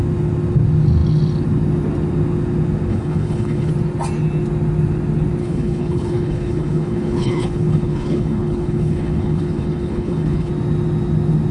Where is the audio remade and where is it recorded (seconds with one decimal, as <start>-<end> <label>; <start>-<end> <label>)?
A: 0.0-2.9 recorded; 2.9-3.7 remade; 3.7-5.4 recorded; 5.4-10.5 remade; 10.5-11.5 recorded